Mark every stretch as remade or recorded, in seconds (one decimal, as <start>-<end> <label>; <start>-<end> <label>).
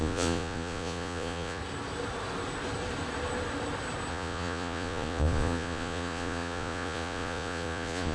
0.0-1.6 remade; 1.6-4.1 recorded; 4.1-8.1 remade